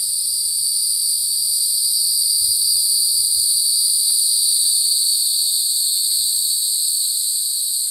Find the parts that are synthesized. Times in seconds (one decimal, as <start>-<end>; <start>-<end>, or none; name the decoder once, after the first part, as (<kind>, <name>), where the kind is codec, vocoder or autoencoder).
0.0-7.9 (vocoder, BigVGAN v2)